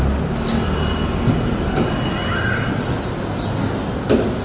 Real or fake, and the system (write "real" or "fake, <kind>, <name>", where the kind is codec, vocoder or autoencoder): real